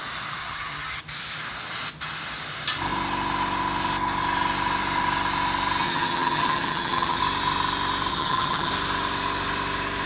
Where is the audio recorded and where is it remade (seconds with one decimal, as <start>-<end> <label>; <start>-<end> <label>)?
0.0-0.4 recorded; 0.4-1.0 remade; 1.0-5.8 recorded; 5.8-7.2 remade; 7.2-8.1 recorded; 8.1-8.7 remade; 8.7-10.1 recorded